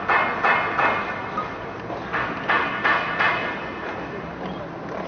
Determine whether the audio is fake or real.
real